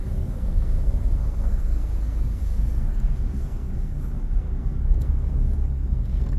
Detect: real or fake fake